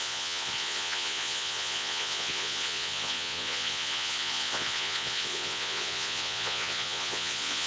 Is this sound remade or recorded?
remade